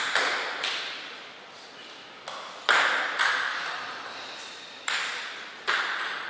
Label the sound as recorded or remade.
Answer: recorded